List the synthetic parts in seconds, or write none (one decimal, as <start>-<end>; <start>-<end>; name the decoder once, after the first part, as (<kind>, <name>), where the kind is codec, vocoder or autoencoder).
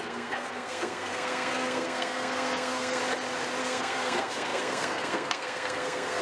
0.0-3.0 (codec, SNAC); 3.6-6.2